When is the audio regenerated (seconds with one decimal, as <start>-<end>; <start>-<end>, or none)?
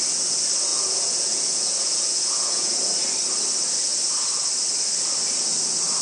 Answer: 0.7-2.8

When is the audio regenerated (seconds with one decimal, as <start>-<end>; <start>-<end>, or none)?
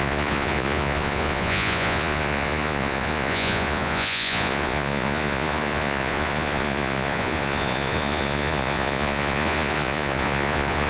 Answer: 0.0-10.9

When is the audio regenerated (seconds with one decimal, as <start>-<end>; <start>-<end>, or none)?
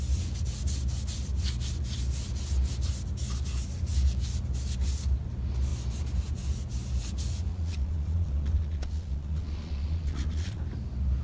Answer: 7.5-10.6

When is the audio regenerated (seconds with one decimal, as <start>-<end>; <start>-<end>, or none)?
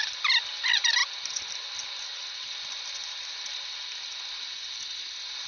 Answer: none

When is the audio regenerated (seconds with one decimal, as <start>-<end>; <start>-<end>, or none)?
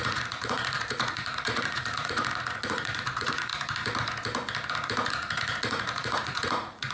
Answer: 0.0-3.5; 5.1-6.9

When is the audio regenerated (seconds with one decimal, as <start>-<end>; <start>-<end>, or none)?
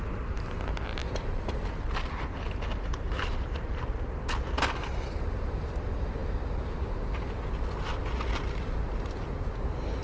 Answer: none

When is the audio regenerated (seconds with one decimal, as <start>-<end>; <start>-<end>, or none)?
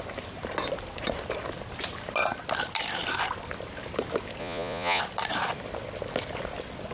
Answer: 4.4-5.0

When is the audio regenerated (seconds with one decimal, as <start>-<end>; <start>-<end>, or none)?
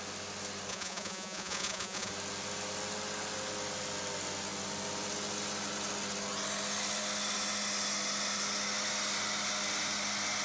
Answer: 0.7-2.1